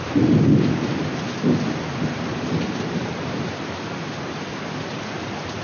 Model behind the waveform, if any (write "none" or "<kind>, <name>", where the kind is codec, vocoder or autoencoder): none